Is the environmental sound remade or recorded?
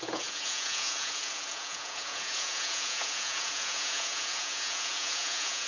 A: remade